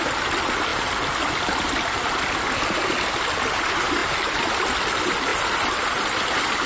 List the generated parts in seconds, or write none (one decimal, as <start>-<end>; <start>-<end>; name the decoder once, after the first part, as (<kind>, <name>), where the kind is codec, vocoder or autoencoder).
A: none